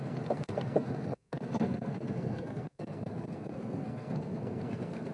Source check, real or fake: fake